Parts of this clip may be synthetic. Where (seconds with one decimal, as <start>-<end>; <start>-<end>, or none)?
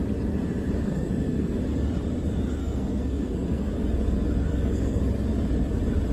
0.8-1.6; 2.6-3.7; 4.5-5.0